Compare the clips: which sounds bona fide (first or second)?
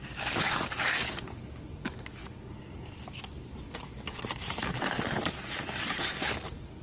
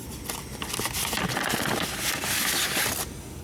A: second